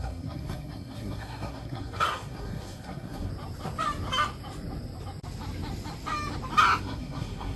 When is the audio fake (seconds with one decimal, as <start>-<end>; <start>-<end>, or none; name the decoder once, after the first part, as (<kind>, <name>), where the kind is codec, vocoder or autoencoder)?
0.0-3.3 (codec, SNAC); 6.8-7.6